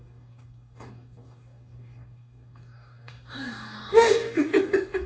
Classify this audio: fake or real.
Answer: fake